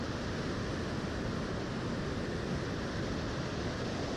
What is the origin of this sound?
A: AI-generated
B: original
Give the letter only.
B